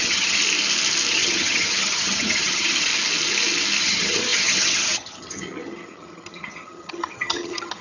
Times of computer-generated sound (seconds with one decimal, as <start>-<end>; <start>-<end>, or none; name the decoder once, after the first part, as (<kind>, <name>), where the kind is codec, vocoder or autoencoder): 0.0-0.4 (vocoder, HiFi-GAN); 1.1-2.9; 3.8-7.8